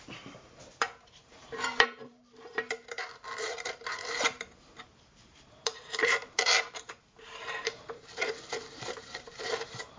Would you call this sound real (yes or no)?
no